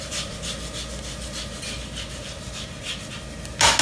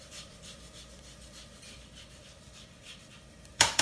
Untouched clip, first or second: first